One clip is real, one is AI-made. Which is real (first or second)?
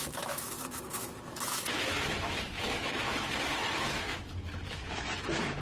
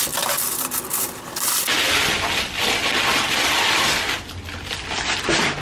second